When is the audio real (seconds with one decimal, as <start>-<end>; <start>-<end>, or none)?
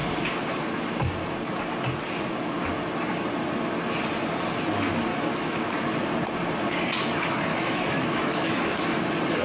0.0-5.1; 5.7-7.5; 9.0-9.4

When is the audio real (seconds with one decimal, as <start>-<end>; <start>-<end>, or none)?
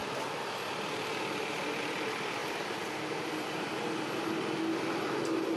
0.0-5.6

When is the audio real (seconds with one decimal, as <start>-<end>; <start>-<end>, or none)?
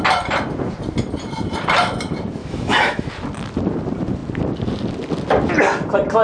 0.0-2.4; 3.1-6.2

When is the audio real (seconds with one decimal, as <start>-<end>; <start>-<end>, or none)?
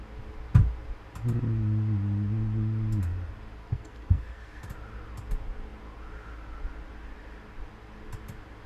0.0-3.6; 4.7-8.7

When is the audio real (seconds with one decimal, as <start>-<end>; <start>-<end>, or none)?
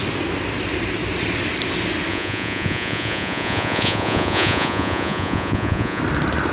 0.0-2.1; 6.0-6.5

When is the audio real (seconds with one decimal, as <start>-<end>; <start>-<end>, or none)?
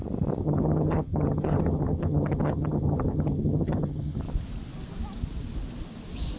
0.0-0.4; 4.2-6.4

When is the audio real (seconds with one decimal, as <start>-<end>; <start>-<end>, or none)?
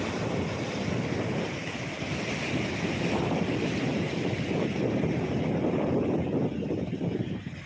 0.0-7.7